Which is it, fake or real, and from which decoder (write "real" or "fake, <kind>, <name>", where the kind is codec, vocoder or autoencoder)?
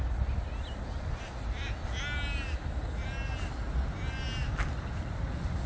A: real